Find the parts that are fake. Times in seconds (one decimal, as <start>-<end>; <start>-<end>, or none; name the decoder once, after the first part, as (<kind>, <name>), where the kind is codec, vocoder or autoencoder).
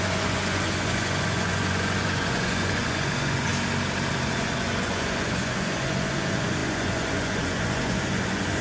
0.0-3.5 (vocoder, Vocos); 4.1-8.6